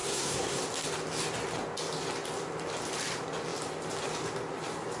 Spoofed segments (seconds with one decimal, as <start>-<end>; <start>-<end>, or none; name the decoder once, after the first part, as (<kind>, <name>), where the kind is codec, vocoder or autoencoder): 0.0-0.6 (codec, SNAC)